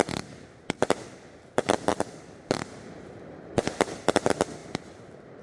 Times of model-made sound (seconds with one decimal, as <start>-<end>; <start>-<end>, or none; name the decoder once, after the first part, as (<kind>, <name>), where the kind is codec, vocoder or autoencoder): 1.9-3.7 (vocoder, BigVGAN v2)